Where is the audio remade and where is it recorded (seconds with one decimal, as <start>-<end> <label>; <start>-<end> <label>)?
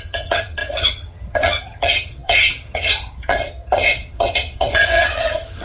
0.0-5.6 remade